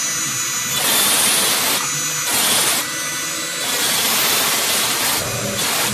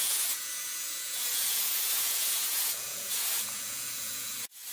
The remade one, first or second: second